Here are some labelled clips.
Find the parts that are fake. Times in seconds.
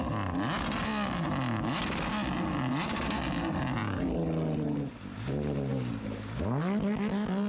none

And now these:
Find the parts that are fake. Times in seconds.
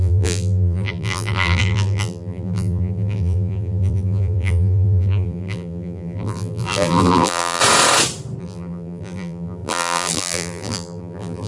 0.0-7.6 (vocoder, BigVGAN v2); 8.4-11.5